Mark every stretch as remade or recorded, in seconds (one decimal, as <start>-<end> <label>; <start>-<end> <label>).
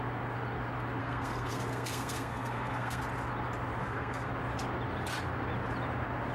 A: 0.0-1.0 recorded; 1.0-3.0 remade; 3.0-3.8 recorded; 3.8-4.3 remade; 4.3-6.3 recorded